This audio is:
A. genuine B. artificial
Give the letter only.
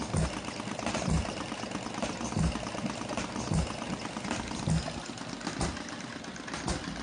A